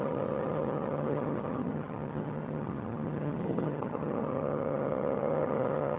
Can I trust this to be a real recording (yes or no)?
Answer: no